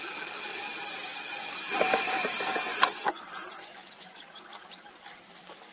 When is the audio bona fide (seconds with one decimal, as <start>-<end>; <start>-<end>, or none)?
0.0-2.7; 4.2-5.7